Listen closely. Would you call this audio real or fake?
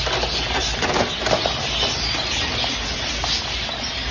real